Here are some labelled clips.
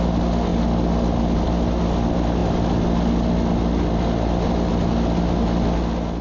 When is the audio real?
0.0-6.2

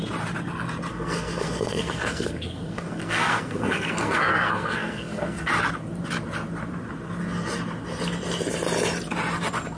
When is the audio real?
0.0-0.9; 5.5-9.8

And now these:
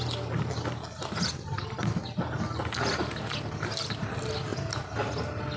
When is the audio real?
0.0-5.6

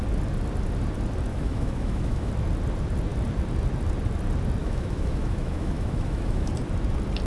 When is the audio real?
0.0-1.3; 2.3-4.6; 6.5-7.3

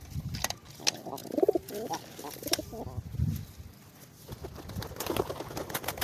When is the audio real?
0.0-6.0

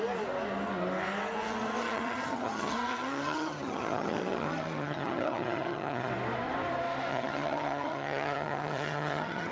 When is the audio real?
0.0-1.8; 6.1-7.1

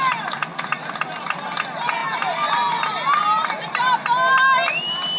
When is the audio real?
0.0-5.2